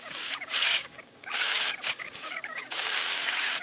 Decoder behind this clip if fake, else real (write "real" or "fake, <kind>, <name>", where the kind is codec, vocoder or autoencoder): fake, codec, DAC